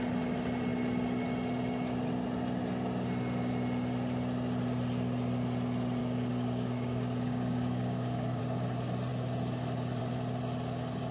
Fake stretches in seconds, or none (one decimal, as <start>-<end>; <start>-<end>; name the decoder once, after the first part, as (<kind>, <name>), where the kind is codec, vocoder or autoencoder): 6.0-8.4 (codec, DAC)